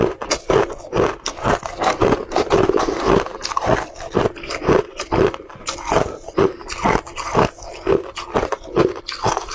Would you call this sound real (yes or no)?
yes